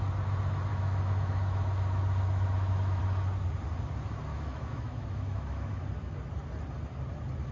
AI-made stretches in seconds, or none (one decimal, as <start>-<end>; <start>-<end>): 0.7-3.0; 4.3-5.8